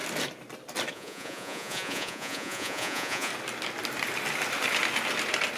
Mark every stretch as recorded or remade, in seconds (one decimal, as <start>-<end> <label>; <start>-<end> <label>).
0.0-0.9 recorded; 0.9-3.3 remade; 3.3-5.6 recorded